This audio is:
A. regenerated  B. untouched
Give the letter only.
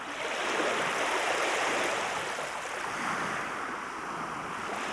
B